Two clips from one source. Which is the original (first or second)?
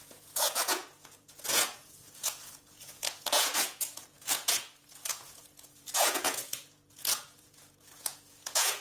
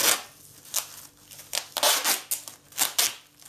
second